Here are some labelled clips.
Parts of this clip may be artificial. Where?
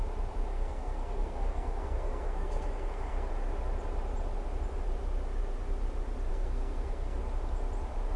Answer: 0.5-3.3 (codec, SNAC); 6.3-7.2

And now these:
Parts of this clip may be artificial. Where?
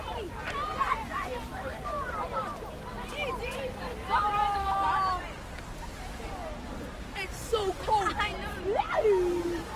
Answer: 0.0-2.5 (vocoder, BigVGAN v2); 6.8-8.3; 9.3-9.8